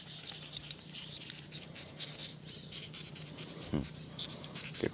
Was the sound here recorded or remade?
remade